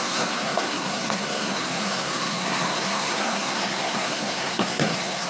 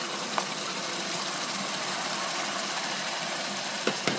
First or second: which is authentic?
second